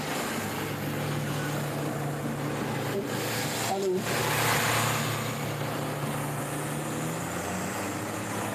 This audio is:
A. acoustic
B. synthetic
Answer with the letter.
A